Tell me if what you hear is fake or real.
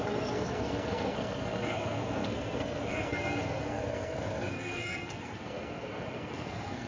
fake